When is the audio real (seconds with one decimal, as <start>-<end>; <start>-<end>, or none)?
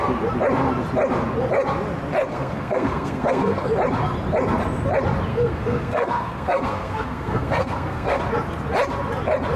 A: 0.0-2.3; 3.7-5.3; 8.2-9.6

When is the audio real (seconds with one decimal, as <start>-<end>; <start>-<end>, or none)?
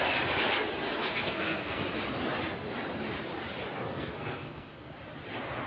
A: 0.0-1.0; 1.8-3.9; 4.9-5.7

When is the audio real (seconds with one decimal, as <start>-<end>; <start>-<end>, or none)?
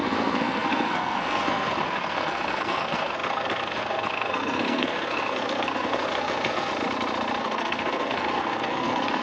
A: 6.7-7.4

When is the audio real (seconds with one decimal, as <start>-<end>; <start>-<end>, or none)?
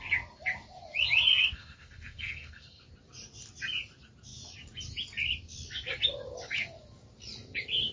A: 0.0-1.3; 2.8-7.9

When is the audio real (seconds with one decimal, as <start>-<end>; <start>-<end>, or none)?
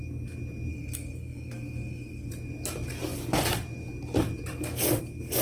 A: 0.0-0.7; 2.3-5.4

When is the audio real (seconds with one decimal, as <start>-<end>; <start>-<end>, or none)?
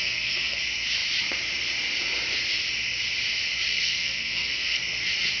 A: 0.6-3.7; 4.8-5.4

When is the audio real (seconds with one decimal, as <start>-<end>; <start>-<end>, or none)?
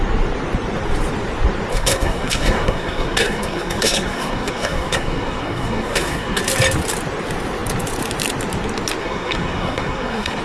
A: 0.0-1.7; 6.4-9.0